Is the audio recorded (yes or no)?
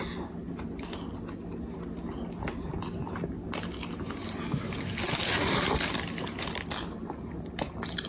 yes